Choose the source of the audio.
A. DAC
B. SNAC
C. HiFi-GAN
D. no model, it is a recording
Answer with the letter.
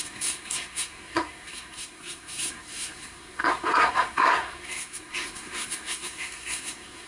B